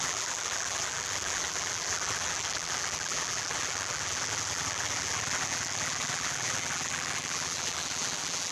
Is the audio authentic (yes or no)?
no